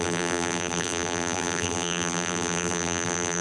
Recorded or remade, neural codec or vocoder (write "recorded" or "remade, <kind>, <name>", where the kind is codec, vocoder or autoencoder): remade, vocoder, BigVGAN v2